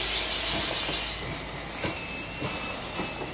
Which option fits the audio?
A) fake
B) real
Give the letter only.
B